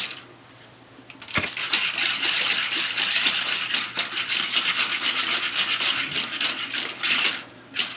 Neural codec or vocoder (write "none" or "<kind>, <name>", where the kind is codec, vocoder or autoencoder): vocoder, BigVGAN v2